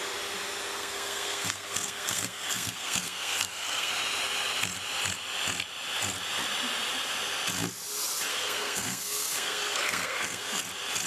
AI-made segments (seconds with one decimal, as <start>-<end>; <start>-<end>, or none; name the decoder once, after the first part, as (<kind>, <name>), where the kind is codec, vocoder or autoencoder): 0.7-3.9 (codec, SNAC); 8.3-10.6